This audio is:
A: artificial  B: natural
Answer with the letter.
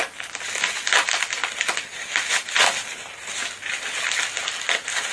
B